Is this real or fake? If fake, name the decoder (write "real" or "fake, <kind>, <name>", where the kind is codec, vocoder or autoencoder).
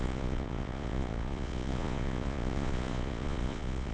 fake, vocoder, Vocos